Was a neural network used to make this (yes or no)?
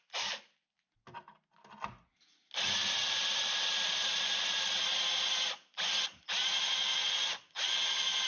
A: no